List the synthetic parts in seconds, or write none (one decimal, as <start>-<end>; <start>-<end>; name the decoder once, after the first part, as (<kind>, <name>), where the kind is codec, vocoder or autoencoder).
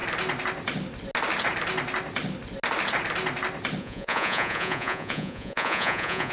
3.8-6.3 (vocoder, Vocos)